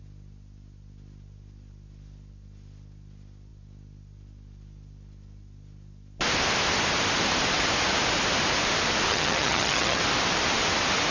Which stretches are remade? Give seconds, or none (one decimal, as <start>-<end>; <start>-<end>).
9.1-10.0